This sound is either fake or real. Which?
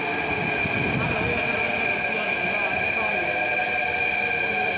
real